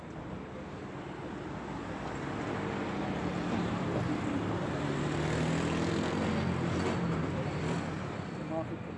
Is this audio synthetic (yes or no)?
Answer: no